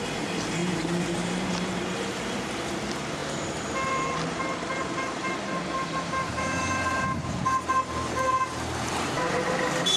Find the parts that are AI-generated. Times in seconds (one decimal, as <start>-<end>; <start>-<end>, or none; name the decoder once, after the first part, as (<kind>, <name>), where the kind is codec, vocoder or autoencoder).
0.0-10.0 (vocoder, BigVGAN v2)